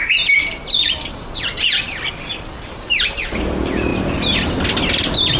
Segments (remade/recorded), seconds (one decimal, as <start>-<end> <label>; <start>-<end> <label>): 0.0-3.2 remade; 3.2-5.4 recorded